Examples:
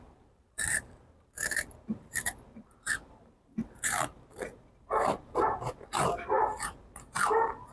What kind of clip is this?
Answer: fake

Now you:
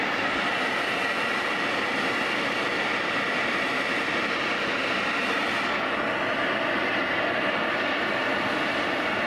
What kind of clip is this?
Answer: real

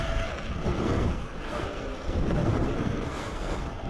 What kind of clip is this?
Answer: fake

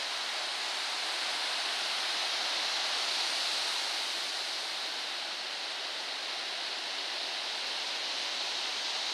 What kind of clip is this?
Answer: real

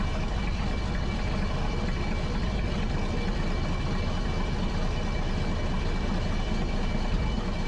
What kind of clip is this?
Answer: real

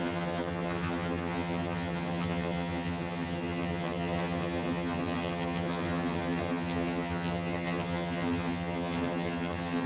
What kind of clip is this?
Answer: fake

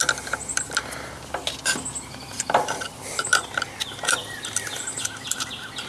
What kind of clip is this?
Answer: real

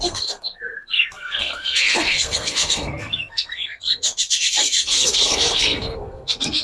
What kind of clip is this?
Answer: fake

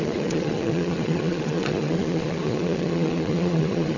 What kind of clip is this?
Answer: fake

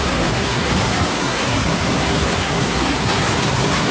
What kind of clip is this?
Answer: fake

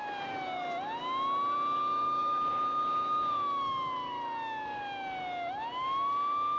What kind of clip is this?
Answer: real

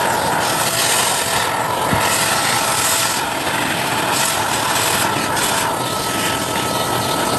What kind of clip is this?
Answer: real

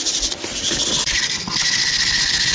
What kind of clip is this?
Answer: real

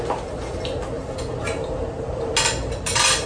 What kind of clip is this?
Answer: real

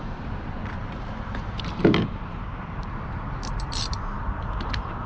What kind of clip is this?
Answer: fake